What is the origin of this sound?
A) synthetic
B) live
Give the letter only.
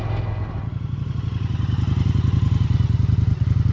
B